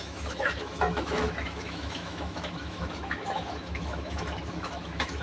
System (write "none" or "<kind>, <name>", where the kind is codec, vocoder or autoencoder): autoencoder, DAC-VAE